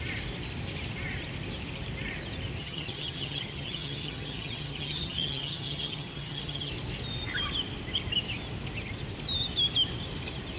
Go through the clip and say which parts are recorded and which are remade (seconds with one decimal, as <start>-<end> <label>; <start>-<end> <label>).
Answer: 0.0-2.6 recorded; 2.6-6.7 remade; 6.7-10.6 recorded